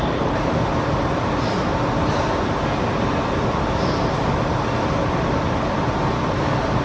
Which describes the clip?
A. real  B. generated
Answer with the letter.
A